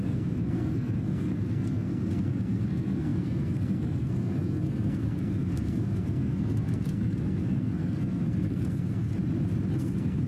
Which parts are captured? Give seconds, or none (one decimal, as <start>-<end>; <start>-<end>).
9.1-9.8